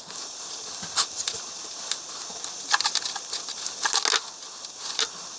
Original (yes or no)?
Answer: yes